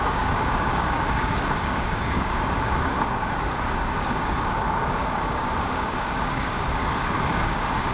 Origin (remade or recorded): remade